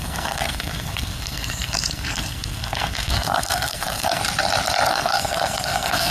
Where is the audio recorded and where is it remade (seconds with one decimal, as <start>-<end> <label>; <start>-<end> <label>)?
0.0-4.2 remade; 4.2-4.9 recorded; 4.9-6.1 remade